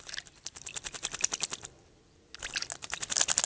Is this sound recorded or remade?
recorded